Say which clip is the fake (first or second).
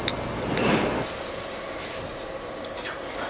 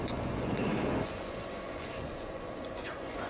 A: second